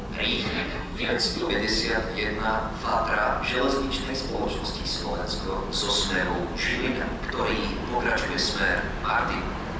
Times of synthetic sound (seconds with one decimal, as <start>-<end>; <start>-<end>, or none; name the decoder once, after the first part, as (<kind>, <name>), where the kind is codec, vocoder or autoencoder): 0.4-1.5 (codec, SNAC)